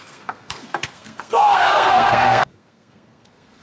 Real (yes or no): no